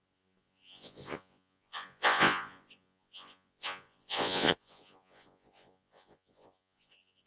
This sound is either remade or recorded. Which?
remade